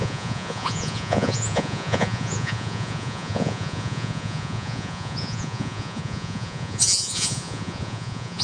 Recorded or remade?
remade